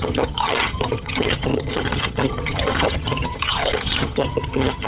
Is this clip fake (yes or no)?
yes